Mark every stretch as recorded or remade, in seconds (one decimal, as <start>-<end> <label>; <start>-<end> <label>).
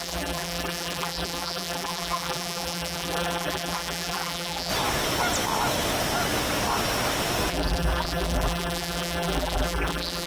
0.0-4.7 remade; 4.7-7.5 recorded; 7.5-10.3 remade